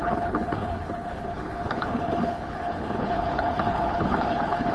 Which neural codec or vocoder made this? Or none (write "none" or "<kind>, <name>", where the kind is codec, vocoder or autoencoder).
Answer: codec, HILCodec